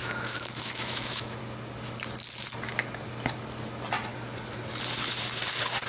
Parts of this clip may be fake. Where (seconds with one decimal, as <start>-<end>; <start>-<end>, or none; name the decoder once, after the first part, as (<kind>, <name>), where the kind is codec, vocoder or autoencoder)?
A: 0.0-1.4 (autoencoder, DAC-VAE)

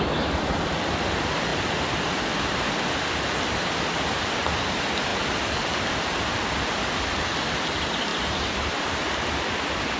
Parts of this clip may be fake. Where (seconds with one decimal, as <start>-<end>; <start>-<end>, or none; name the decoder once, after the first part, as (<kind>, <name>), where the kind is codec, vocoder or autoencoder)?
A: none

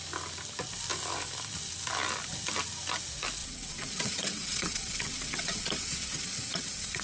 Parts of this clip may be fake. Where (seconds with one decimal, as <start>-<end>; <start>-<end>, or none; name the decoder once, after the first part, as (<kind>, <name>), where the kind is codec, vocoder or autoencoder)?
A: 3.4-7.0 (vocoder, WaveNeXt)

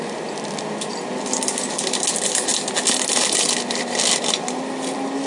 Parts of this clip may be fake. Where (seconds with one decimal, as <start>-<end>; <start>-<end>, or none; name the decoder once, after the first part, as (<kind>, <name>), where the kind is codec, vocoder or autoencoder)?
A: none

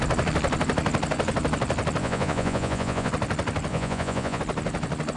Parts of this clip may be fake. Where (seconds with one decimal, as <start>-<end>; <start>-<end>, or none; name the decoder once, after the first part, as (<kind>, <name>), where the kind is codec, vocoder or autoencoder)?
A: 2.0-3.1 (vocoder, Vocos); 3.7-4.4

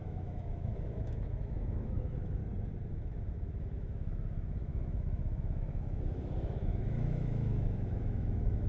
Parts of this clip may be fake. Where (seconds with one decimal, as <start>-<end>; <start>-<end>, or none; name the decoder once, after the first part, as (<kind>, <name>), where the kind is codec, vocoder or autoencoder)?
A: 0.0-2.4 (autoencoder, DAC-VAE); 2.9-8.7